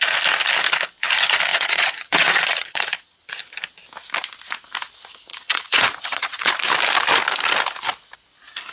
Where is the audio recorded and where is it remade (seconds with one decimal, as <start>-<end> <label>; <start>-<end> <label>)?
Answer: 0.0-1.5 recorded; 1.5-3.4 remade; 3.4-5.3 recorded; 5.3-6.5 remade; 6.5-8.7 recorded